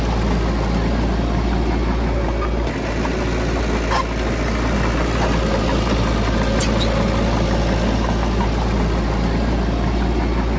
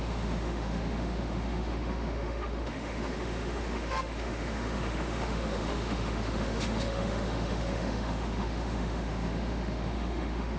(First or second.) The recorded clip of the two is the first